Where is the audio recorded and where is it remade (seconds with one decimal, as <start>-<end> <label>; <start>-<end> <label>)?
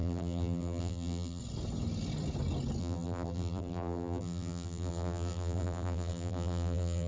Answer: 0.0-1.4 remade; 1.4-2.8 recorded; 2.8-7.1 remade